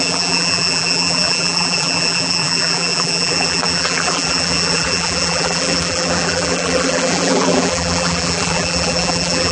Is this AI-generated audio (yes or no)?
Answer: yes